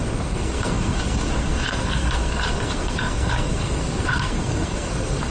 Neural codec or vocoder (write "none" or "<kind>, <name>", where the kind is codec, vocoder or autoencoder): codec, SNAC